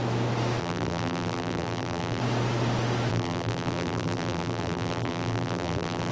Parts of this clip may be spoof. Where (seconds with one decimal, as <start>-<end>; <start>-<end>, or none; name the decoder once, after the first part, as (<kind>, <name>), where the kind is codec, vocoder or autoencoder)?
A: 0.6-2.2 (vocoder, BigVGAN v2); 3.1-6.1